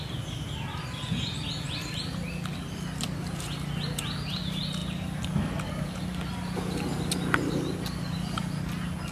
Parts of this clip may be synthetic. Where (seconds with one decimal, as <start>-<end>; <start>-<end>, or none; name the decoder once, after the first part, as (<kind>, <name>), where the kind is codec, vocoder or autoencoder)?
none